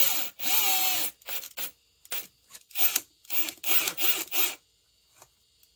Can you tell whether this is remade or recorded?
recorded